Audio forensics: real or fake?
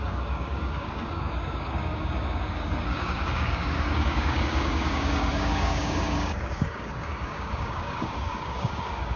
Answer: fake